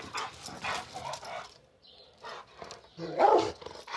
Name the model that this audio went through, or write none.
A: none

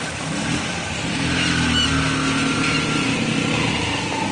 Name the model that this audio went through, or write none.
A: none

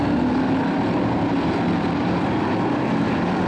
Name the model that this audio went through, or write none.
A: none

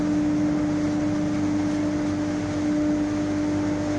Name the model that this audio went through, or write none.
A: none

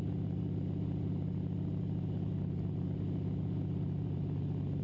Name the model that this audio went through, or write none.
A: none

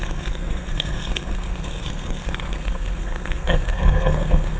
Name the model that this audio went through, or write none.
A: codec, SNAC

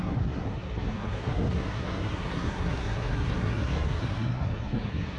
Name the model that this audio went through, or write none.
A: codec, SNAC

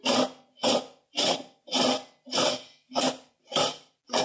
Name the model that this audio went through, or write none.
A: none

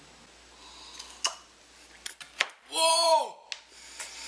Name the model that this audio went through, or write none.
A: none